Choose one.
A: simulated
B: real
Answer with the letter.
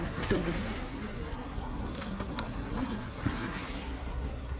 A